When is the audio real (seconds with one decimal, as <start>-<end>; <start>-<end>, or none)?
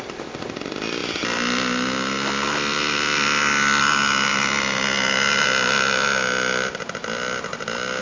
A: 0.0-8.0